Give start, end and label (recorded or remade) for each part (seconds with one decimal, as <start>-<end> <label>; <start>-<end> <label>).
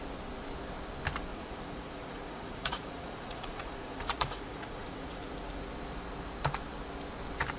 0.0-1.3 recorded; 1.3-5.3 remade; 5.3-7.6 recorded